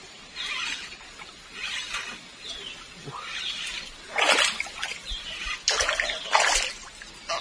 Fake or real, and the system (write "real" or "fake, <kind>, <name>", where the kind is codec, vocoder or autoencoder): real